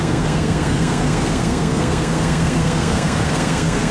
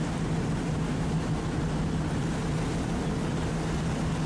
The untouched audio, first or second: second